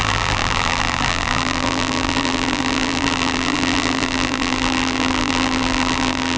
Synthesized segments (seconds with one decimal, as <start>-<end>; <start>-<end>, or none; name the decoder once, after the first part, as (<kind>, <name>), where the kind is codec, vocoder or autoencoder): 0.0-6.4 (vocoder, BigVGAN v2)

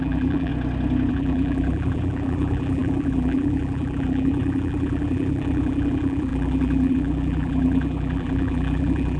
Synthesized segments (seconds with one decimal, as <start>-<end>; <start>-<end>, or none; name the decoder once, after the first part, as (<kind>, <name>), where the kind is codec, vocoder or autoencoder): 0.0-0.5 (vocoder, BigVGAN v2); 1.1-9.2

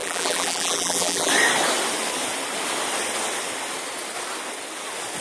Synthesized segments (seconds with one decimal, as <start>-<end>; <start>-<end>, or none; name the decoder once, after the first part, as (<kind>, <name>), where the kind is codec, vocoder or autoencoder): 0.0-1.3 (vocoder, BigVGAN v2)